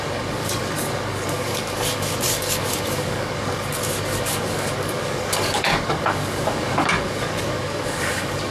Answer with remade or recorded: remade